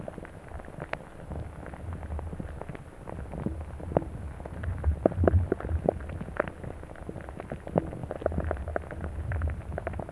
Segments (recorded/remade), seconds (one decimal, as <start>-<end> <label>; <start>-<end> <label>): 0.0-10.1 recorded